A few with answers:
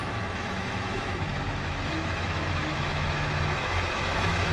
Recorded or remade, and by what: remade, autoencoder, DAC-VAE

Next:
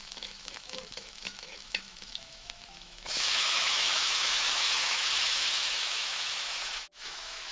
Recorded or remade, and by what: remade, autoencoder, DAC-VAE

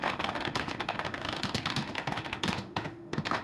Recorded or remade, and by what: remade, autoencoder, DAC-VAE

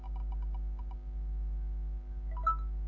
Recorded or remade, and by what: recorded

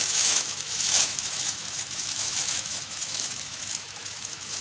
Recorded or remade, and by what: remade, autoencoder, DAC-VAE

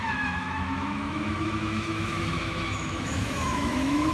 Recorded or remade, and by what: remade, autoencoder, DAC-VAE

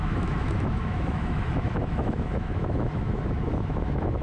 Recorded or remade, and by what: remade, autoencoder, DAC-VAE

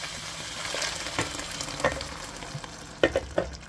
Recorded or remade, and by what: recorded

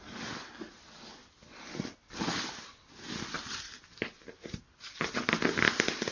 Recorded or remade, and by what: recorded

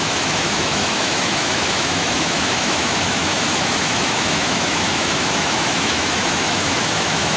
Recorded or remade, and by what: remade, autoencoder, DAC-VAE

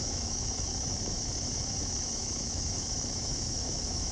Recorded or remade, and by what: remade, autoencoder, DAC-VAE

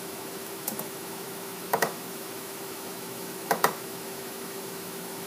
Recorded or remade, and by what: remade, autoencoder, DAC-VAE